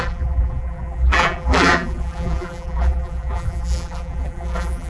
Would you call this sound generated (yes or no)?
yes